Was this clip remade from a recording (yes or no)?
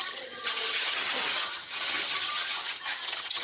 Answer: yes